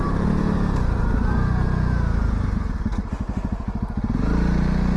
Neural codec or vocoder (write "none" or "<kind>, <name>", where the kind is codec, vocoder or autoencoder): none